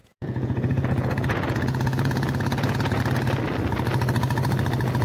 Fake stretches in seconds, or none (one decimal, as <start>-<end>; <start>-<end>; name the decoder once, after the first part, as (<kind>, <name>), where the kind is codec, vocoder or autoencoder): 0.0-3.0 (vocoder, Vocos)